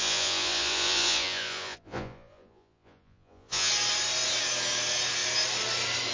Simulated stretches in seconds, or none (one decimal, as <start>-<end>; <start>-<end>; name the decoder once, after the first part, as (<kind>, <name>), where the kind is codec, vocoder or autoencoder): 0.0-3.7 (vocoder, Vocos)